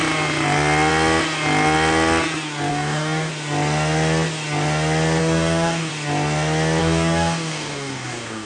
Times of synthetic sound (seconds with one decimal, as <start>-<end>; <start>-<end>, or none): 2.7-3.3; 5.2-5.9; 6.8-8.5